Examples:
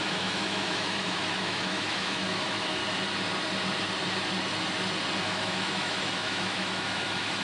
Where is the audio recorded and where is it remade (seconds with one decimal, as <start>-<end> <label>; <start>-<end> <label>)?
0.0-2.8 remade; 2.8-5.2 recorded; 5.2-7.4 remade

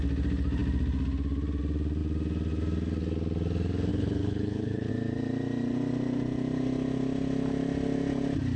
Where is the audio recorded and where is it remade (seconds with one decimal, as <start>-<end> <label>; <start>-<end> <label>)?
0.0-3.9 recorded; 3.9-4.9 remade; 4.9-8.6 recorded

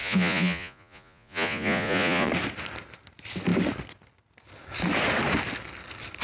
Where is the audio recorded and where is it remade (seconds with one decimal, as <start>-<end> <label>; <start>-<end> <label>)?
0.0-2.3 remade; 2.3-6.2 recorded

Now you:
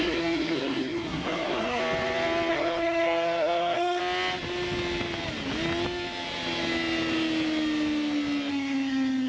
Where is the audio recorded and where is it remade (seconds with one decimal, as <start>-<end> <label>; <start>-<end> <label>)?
0.0-1.8 remade; 1.8-2.5 recorded; 2.5-4.0 remade; 4.0-8.5 recorded; 8.5-9.3 remade